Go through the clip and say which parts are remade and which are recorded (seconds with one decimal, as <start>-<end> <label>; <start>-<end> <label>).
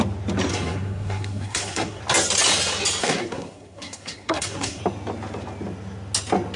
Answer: 0.0-0.5 recorded; 0.5-2.0 remade; 2.0-3.0 recorded; 3.0-4.8 remade; 4.8-6.6 recorded